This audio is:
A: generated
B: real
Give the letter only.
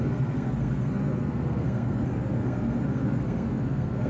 A